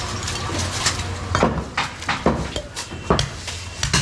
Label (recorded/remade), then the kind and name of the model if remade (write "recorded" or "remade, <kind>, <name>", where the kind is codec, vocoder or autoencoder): recorded